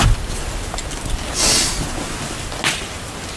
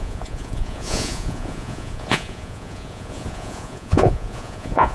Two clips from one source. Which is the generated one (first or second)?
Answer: second